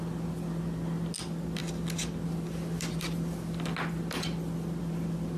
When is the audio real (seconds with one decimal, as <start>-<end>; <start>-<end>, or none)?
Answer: 0.0-5.4